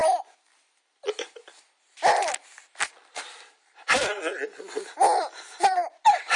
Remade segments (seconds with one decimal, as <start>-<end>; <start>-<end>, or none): 0.0-4.3; 5.2-6.4